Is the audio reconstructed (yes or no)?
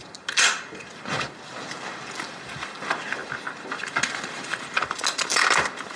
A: no